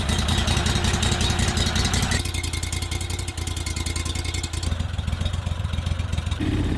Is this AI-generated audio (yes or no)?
no